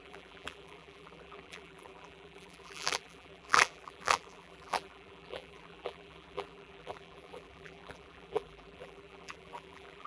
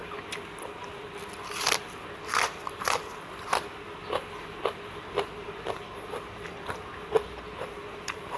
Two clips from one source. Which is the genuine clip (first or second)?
second